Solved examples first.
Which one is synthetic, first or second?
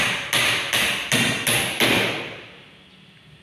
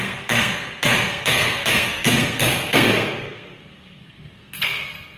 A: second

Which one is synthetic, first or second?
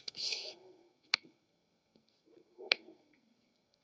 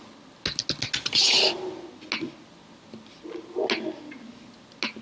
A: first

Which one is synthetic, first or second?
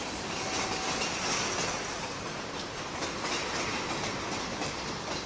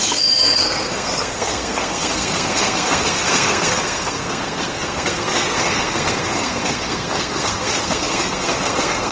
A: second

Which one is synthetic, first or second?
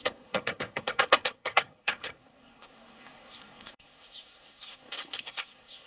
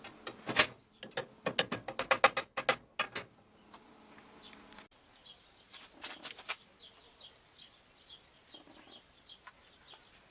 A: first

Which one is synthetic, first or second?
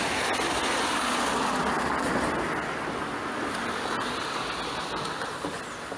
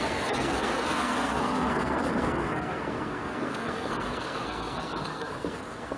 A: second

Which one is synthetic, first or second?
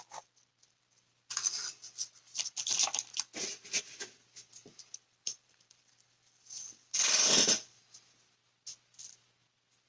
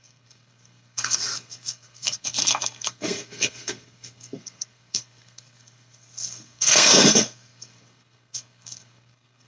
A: second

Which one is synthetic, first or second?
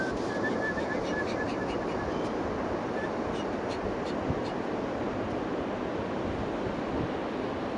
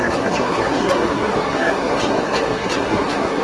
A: second